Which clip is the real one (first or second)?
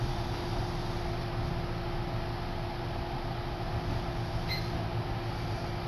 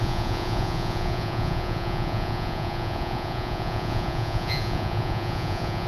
first